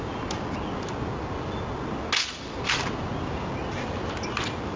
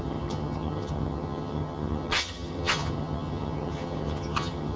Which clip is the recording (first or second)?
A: first